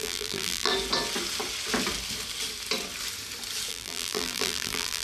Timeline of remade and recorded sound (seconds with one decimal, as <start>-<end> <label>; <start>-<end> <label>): 0.0-0.7 remade; 0.7-3.7 recorded; 3.7-5.0 remade